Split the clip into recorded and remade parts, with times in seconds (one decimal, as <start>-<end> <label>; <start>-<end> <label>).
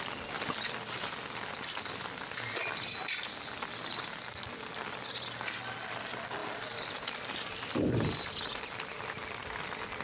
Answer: 0.0-10.0 recorded